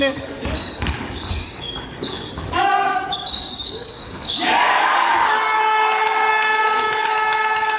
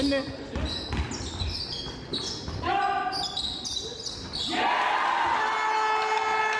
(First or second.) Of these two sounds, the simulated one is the first